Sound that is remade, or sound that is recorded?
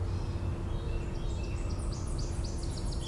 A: recorded